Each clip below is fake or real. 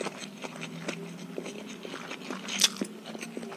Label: real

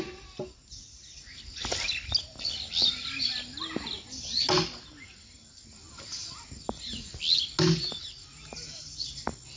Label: real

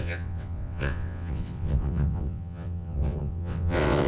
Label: fake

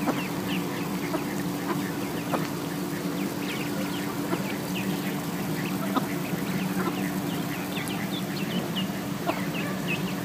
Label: real